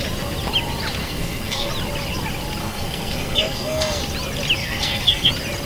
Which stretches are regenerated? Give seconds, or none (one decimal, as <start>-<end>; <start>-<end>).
1.0-1.7; 2.6-4.0; 4.6-5.3